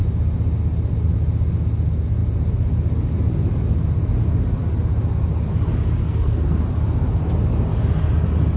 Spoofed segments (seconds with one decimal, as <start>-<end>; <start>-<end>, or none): 6.0-6.6